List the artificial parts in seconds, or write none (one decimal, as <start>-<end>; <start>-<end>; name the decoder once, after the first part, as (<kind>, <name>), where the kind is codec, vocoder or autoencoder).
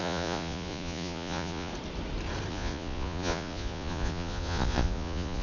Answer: 0.0-1.7 (vocoder, Vocos); 2.5-5.4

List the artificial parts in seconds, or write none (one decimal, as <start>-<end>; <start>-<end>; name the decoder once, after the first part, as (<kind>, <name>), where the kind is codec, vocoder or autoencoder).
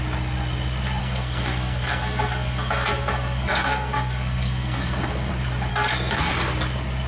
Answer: 1.0-5.3 (codec, SNAC); 5.7-6.3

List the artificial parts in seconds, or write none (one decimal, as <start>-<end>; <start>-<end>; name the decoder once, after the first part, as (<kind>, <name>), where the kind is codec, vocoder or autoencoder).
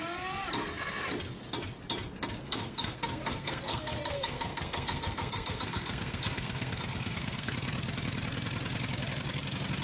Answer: 2.4-7.5 (codec, SNAC)